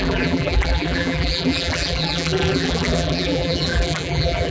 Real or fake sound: fake